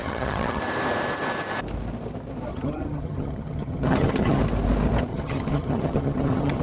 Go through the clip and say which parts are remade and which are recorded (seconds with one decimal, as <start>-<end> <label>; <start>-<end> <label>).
0.0-0.6 remade; 0.6-2.5 recorded; 2.5-4.4 remade; 4.4-5.1 recorded; 5.1-6.6 remade